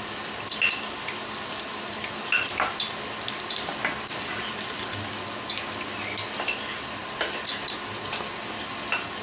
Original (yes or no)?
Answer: yes